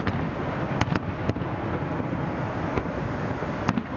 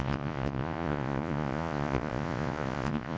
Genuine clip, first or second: first